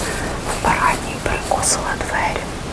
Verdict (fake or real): real